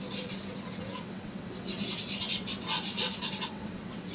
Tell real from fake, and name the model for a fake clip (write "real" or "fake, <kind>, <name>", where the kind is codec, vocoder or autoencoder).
fake, vocoder, WaveNeXt